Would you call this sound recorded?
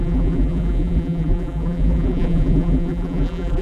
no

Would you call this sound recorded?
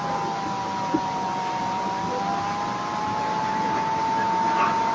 yes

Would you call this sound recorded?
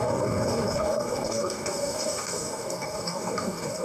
no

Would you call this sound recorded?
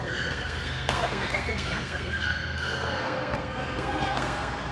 no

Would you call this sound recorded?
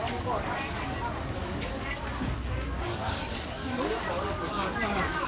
no